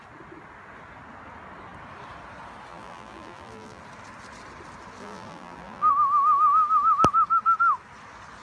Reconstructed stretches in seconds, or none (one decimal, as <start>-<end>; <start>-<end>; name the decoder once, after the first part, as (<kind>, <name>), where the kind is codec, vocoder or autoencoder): 2.7-3.8 (vocoder, BigVGAN v2); 5.0-5.9